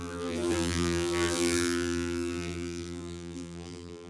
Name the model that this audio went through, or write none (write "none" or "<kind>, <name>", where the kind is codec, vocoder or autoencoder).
vocoder, BigVGAN v2